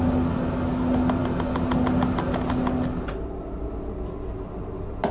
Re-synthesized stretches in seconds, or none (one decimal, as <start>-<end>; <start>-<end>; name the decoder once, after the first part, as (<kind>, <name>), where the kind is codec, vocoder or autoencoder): none